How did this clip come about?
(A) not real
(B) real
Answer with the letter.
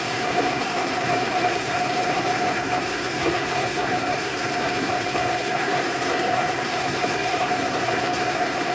A